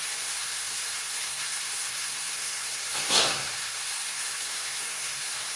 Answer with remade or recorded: remade